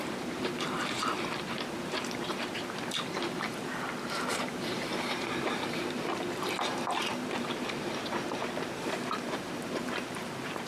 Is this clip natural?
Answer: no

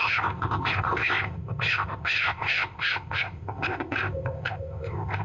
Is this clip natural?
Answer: no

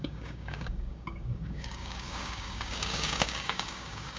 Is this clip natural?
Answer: no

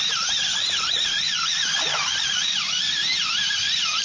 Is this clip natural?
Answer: yes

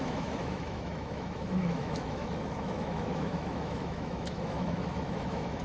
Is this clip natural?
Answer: no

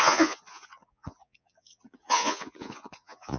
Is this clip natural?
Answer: no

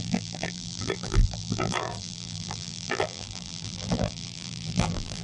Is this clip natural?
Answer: no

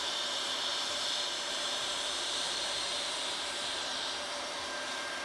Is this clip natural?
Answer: no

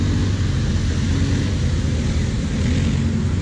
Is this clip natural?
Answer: yes